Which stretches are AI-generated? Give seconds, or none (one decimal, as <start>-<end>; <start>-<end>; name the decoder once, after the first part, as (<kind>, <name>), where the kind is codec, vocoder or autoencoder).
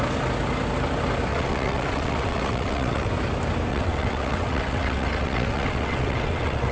1.3-3.1 (vocoder, WaveNeXt); 3.7-6.7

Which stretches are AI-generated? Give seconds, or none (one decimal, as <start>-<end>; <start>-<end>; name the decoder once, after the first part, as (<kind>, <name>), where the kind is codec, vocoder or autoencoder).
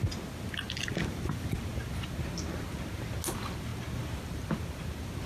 none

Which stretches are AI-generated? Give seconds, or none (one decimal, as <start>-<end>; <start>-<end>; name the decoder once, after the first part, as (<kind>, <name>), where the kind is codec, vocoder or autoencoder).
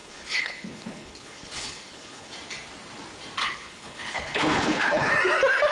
0.0-2.3 (codec, HILCodec); 3.4-5.1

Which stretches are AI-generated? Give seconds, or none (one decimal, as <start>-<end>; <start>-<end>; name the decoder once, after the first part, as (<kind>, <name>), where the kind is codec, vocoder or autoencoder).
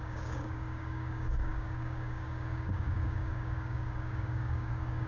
0.0-5.1 (codec, DAC)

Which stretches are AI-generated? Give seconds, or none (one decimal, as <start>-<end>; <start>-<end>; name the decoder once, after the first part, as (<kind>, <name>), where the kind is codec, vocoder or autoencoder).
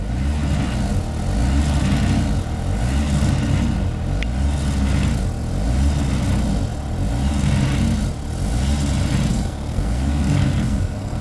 9.3-11.2 (codec, SNAC)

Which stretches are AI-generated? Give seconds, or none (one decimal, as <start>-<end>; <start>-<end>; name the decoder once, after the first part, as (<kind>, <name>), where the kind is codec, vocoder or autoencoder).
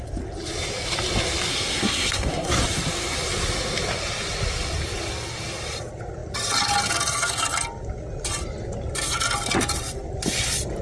1.5-2.5 (codec, SNAC)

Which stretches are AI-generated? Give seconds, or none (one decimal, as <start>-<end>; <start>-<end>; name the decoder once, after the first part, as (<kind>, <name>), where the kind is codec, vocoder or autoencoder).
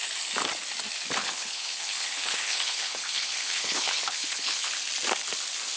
1.2-4.7 (codec, HILCodec)